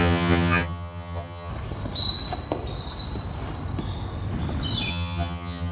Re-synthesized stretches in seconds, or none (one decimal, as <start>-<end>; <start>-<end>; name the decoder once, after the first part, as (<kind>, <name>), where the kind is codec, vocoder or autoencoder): 0.0-1.5 (vocoder, HiFi-GAN); 4.9-5.7